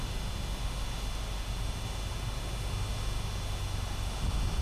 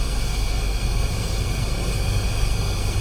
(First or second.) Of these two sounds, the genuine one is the first